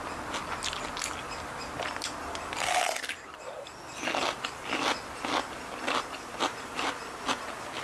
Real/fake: real